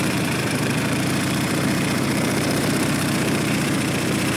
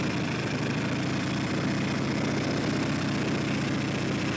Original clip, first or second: second